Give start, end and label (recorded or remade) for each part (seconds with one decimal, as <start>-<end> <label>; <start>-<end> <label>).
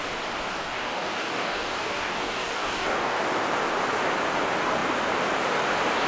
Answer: 0.0-0.5 recorded; 0.5-3.2 remade; 3.2-6.1 recorded